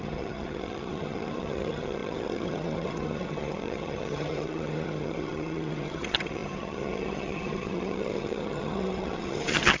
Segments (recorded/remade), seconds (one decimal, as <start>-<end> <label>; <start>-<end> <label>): 0.0-9.8 remade